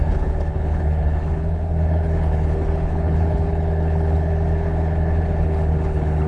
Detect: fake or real fake